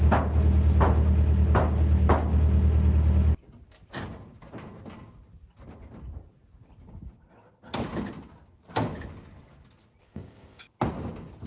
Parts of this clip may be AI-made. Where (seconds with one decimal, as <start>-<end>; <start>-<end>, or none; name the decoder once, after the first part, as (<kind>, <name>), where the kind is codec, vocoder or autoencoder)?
10.0-10.6 (codec, ZipCodec)